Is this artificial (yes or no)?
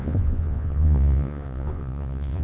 yes